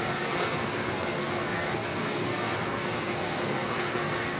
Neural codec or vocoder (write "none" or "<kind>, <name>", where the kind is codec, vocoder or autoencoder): codec, SNAC